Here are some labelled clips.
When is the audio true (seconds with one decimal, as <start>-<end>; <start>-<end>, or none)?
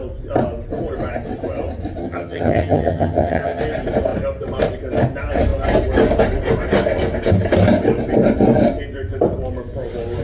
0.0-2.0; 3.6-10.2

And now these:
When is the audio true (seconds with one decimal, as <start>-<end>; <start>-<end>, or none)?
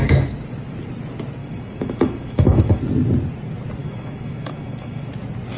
0.0-1.4; 2.8-3.8; 5.1-5.6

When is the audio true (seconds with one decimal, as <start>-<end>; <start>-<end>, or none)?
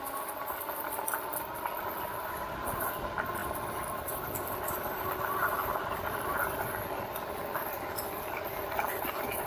0.0-9.5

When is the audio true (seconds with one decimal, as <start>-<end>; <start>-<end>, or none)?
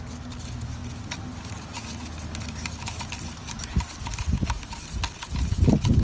0.0-6.0